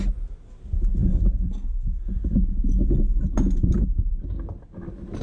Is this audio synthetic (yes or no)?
no